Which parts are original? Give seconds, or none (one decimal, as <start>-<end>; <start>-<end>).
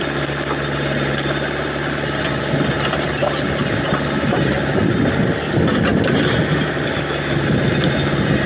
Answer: 0.0-8.5